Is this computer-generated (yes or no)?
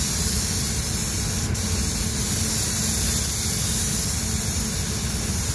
no